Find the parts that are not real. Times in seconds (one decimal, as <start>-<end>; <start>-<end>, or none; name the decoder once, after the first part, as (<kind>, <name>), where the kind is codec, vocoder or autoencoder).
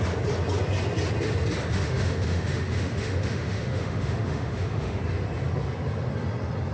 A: 1.7-5.0 (autoencoder, DAC-VAE)